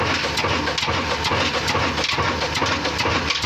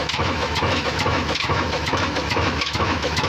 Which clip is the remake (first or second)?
second